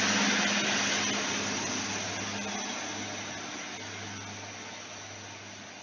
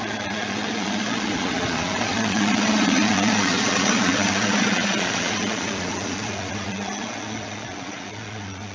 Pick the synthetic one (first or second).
second